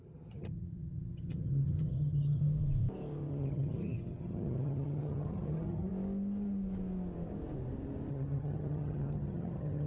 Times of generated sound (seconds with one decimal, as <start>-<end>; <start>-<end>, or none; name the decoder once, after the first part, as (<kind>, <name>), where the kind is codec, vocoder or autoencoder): 0.0-2.4 (vocoder, HiFi-GAN); 3.3-5.9; 8.1-9.9